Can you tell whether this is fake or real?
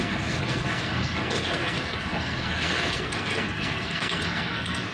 fake